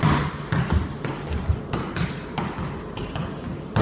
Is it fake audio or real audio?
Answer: real